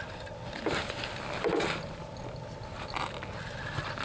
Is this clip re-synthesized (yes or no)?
no